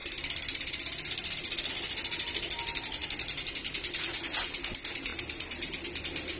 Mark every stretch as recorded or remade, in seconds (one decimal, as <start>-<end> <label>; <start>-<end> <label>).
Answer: 0.0-1.7 remade; 1.7-3.0 recorded; 3.0-3.5 remade; 3.5-6.4 recorded